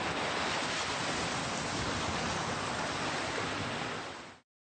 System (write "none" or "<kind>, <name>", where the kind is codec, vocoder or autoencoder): none